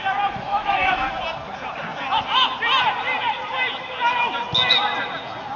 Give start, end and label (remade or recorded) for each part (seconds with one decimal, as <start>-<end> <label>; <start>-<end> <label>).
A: 0.0-0.5 recorded; 0.5-1.1 remade; 1.1-5.6 recorded